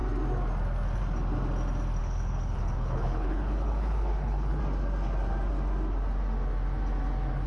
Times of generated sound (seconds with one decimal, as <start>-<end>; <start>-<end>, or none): 2.0-4.6